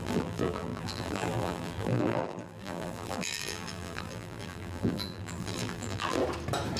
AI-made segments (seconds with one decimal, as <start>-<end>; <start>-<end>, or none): 0.0-6.2